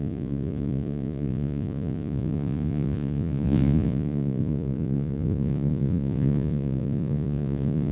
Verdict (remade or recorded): remade